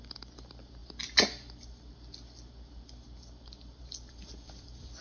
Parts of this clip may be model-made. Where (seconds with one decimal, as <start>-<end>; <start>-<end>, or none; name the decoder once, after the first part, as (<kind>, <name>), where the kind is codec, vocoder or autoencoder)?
none